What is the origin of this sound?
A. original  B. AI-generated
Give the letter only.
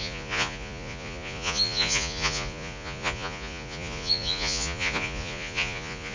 B